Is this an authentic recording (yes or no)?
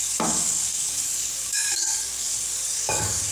no